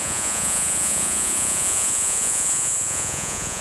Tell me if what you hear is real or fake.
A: fake